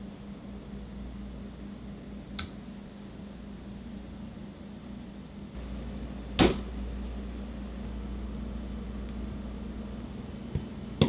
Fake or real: real